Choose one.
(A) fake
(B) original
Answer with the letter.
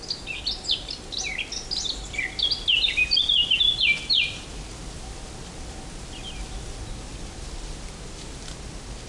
B